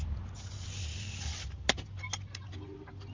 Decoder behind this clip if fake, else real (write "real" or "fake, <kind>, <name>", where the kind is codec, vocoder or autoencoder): real